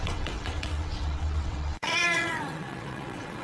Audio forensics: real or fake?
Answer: fake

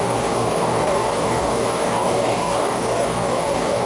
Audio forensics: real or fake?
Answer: fake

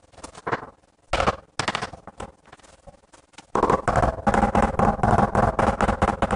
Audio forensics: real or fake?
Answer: real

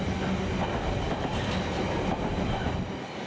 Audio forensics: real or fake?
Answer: real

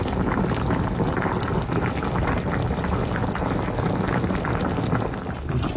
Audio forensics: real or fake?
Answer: real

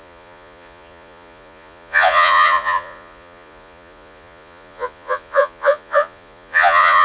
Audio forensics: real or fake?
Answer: fake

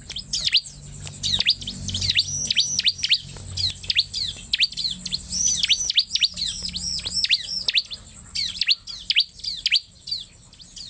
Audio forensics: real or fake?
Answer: real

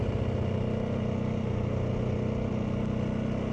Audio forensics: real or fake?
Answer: real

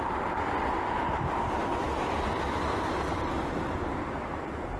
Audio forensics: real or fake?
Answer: real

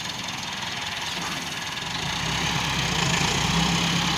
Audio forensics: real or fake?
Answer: real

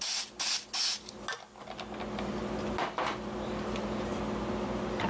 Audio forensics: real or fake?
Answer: real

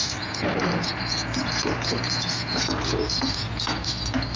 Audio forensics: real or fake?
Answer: real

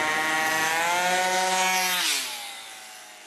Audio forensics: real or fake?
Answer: real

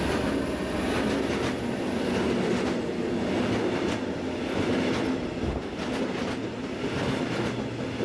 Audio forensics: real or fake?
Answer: real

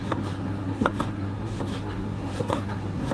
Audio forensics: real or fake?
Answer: fake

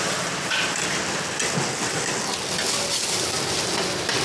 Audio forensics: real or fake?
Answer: real